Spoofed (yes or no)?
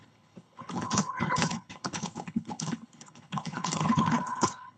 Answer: yes